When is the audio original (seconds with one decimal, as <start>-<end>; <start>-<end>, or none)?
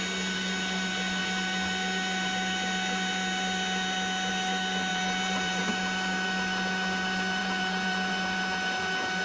0.0-4.9; 5.6-7.4; 8.1-9.2